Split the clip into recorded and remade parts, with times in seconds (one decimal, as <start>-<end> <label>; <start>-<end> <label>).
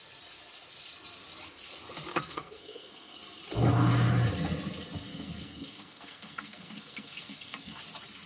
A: 0.0-2.1 recorded; 2.1-3.2 remade; 3.2-5.1 recorded; 5.1-7.8 remade; 7.8-8.3 recorded